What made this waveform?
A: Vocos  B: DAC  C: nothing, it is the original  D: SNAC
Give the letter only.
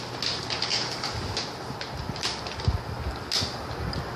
C